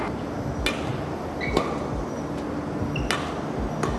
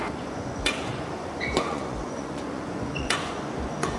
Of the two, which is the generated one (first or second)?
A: second